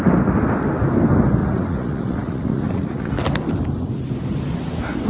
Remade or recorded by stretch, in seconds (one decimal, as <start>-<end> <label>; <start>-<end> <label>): 0.0-1.4 recorded; 1.4-3.1 remade; 3.1-5.1 recorded